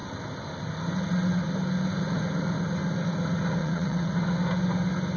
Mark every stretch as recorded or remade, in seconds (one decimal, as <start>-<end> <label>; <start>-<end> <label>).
0.0-3.6 recorded; 3.6-4.1 remade; 4.1-5.2 recorded